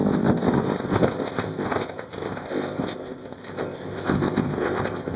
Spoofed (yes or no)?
yes